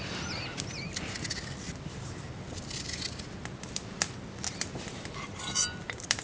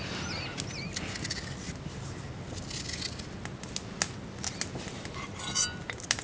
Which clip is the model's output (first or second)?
first